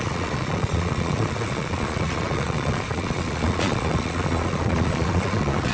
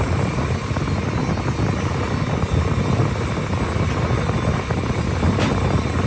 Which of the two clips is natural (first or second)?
second